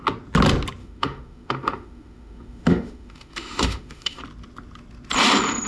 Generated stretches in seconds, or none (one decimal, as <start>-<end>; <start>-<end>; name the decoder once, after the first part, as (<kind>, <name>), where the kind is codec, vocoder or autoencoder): 0.8-4.2 (autoencoder, DAC-VAE)